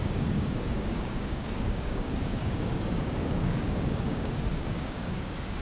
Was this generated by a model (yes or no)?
yes